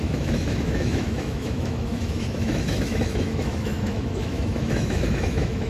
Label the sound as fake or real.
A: fake